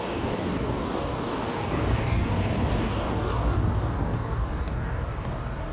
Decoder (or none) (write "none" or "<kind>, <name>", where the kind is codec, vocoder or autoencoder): codec, DAC